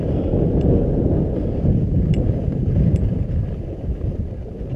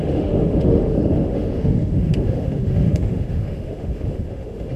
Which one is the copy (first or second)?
second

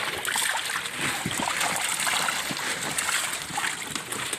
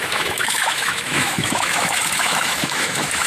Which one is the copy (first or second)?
second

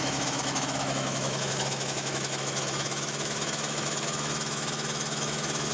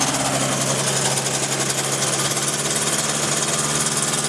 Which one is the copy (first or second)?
first